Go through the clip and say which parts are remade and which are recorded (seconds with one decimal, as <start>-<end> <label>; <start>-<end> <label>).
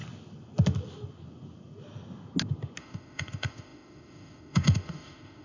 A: 0.0-2.8 recorded; 2.8-5.4 remade